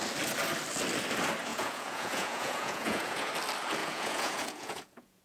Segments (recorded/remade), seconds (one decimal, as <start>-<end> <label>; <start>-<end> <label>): 0.0-1.5 recorded; 1.5-3.3 remade; 3.3-3.8 recorded; 3.8-5.2 remade